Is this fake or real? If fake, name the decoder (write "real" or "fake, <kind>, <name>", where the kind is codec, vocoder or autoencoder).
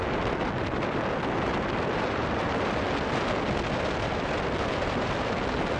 real